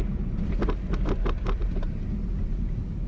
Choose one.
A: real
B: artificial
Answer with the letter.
A